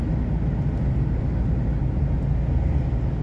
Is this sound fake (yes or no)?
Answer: no